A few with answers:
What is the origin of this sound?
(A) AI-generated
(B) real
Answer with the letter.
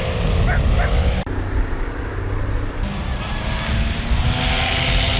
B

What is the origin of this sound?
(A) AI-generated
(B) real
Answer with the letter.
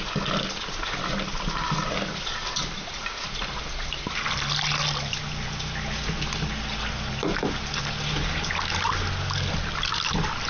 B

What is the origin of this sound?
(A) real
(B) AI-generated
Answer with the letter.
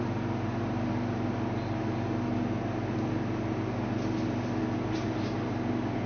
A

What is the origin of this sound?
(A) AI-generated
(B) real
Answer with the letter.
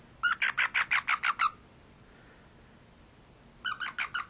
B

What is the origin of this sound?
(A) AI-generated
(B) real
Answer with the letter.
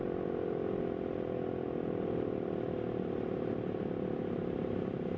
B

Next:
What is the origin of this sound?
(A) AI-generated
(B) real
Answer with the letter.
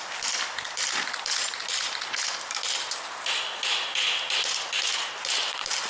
B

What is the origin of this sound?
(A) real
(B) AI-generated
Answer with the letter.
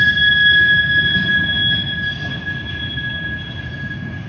A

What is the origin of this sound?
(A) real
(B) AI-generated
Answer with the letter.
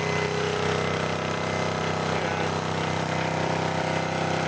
A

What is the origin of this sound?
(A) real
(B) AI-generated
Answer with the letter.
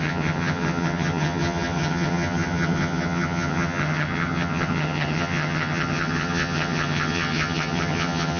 B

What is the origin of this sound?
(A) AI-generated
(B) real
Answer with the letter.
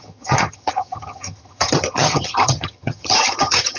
A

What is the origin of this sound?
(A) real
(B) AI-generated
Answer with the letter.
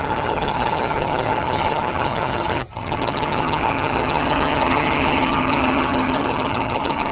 B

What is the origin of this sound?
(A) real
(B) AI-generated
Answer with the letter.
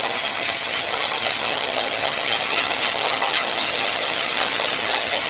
B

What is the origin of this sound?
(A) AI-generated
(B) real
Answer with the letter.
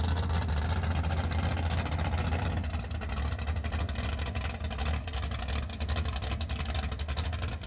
B